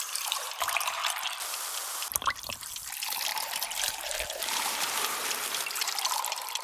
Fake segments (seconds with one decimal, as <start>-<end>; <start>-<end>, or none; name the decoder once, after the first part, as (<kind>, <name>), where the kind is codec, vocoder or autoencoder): 0.0-1.0 (vocoder, BigVGAN v2); 1.9-6.6